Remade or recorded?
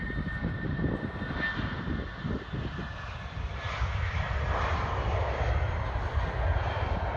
recorded